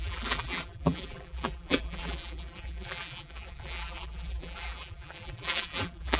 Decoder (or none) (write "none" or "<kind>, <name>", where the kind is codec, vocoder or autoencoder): vocoder, BigVGAN v2